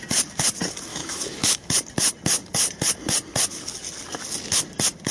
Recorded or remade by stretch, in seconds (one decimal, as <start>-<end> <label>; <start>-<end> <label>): 0.0-0.9 recorded; 0.9-1.7 remade; 1.7-5.1 recorded